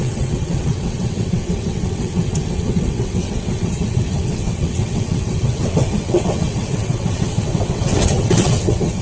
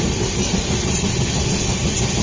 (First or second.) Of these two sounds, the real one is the second